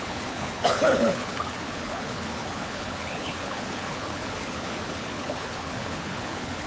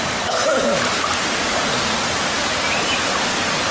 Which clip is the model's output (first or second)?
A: first